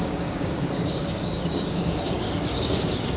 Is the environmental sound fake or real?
fake